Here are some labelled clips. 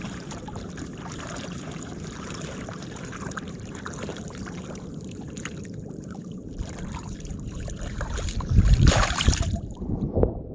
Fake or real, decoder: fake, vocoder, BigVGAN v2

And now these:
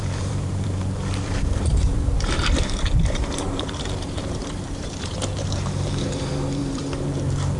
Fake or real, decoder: fake, vocoder, BigVGAN v2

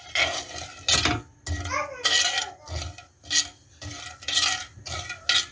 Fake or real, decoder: real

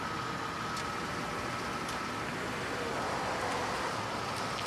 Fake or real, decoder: real